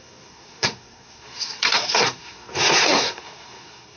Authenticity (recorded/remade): remade